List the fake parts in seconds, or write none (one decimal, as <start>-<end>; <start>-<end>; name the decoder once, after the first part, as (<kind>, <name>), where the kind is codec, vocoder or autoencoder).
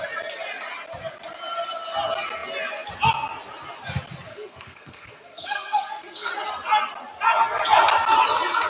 4.3-6.3 (codec, SNAC)